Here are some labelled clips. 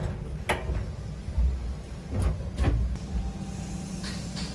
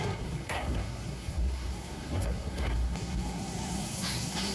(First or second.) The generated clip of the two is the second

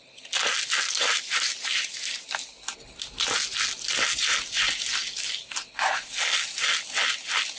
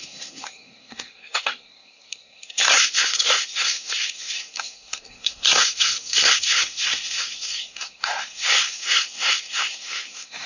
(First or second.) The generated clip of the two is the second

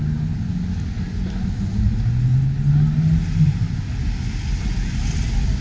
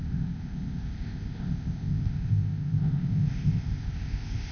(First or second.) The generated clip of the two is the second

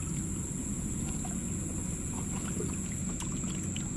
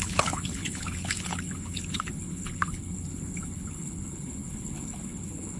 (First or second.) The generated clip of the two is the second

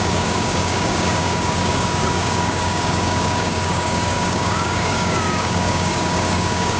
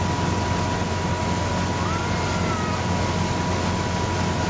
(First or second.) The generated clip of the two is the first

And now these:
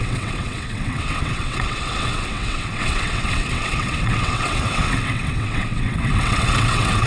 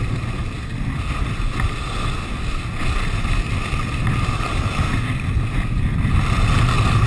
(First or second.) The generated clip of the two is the first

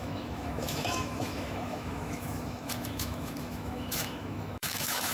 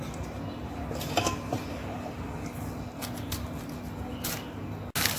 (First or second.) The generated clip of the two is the first